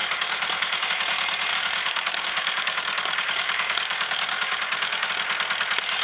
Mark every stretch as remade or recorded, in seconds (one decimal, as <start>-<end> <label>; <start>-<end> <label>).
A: 0.0-0.9 remade; 0.9-1.5 recorded; 1.5-5.1 remade; 5.1-6.0 recorded